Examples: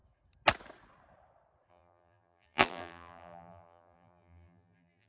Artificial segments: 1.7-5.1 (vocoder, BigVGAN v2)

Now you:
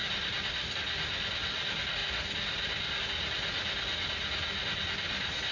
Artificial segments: none